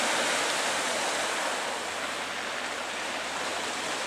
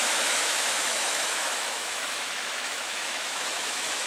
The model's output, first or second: second